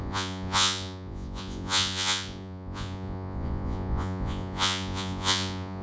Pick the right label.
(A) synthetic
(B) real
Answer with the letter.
A